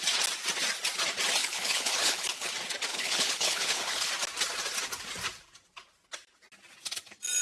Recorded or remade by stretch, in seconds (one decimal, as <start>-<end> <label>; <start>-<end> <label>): 0.0-1.4 recorded; 1.4-2.5 remade; 2.5-2.9 recorded; 2.9-4.1 remade; 4.1-7.4 recorded